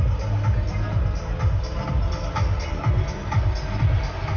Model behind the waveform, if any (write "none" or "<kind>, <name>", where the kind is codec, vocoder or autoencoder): none